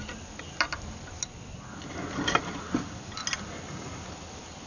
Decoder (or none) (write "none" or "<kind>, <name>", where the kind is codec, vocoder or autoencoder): none